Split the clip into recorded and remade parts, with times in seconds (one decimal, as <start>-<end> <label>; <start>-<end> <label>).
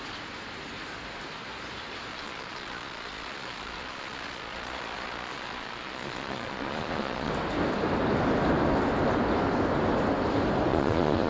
0.0-2.1 recorded; 2.1-7.3 remade; 7.3-10.7 recorded; 10.7-11.3 remade